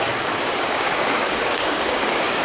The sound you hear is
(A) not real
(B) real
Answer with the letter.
A